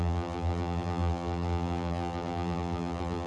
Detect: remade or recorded remade